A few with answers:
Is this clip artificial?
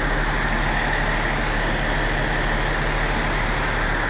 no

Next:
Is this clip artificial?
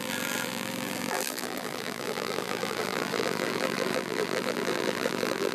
yes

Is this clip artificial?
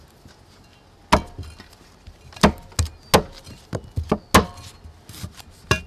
no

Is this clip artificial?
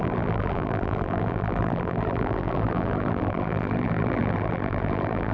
yes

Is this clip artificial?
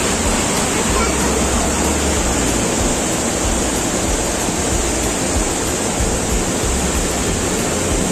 no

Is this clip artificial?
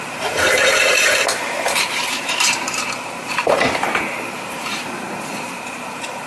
yes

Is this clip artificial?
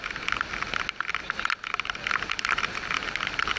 no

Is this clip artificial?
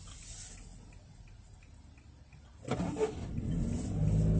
no